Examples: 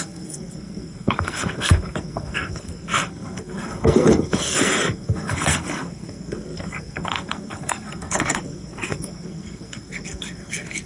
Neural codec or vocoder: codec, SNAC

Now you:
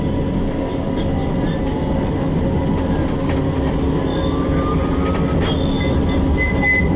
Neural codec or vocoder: none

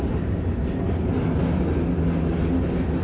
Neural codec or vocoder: none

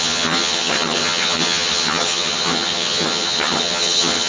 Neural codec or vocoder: vocoder, HiFi-GAN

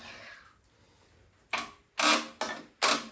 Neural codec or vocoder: none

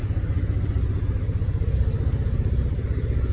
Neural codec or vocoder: none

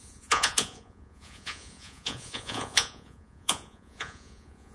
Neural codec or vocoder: vocoder, Vocos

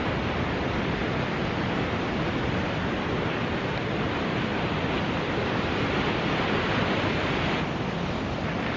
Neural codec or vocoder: none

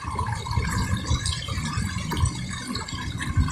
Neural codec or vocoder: none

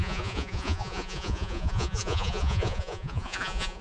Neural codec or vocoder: vocoder, Vocos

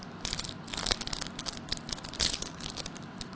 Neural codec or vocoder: none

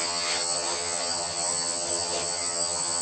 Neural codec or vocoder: vocoder, HiFi-GAN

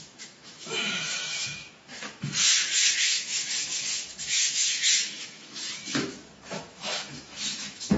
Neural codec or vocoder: autoencoder, DAC-VAE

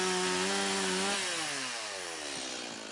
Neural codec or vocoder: none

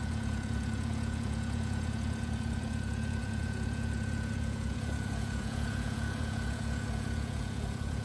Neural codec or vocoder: vocoder, Vocos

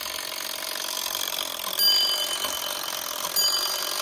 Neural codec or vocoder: none